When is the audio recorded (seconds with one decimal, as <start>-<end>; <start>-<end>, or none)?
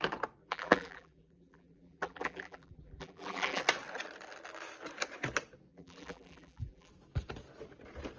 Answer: 0.0-0.4; 3.6-5.7; 6.9-8.2